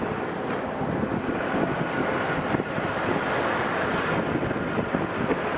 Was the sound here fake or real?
real